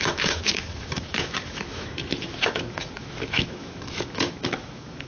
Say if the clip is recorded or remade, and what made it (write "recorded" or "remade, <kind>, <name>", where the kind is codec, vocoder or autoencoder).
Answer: remade, autoencoder, DAC-VAE